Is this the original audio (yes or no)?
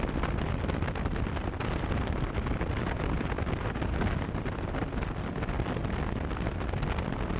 yes